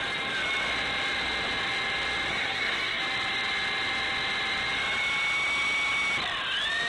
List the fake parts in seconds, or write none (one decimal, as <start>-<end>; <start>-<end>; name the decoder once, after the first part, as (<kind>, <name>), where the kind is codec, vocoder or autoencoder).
2.3-3.0 (codec, SNAC)